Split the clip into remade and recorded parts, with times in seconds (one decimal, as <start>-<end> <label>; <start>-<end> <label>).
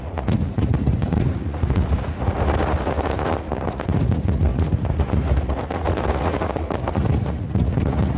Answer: 0.0-8.2 remade